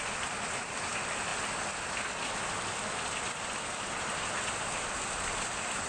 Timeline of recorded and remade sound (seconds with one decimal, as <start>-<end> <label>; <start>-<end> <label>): 0.0-5.9 recorded